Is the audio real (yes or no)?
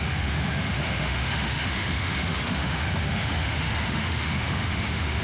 no